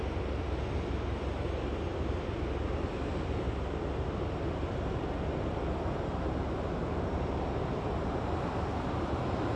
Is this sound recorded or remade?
recorded